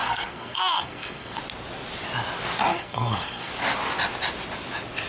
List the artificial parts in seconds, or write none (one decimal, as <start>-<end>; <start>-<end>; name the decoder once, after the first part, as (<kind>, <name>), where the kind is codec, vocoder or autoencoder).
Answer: 0.0-1.4 (codec, SNAC); 2.7-3.5